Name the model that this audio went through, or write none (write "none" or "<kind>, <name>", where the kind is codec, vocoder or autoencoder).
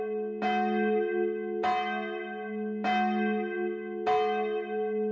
none